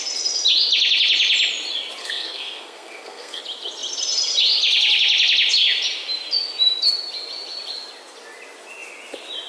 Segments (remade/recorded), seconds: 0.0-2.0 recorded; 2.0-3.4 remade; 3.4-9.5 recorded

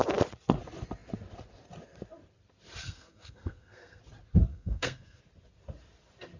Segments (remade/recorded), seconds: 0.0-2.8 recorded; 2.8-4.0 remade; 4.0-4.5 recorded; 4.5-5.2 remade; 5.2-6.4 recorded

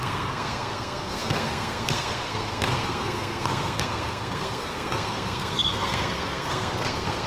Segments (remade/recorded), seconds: 0.0-7.3 remade